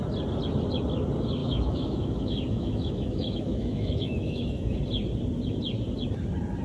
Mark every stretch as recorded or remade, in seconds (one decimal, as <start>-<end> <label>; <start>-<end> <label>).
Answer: 0.0-1.4 recorded; 1.4-4.8 remade; 4.8-6.6 recorded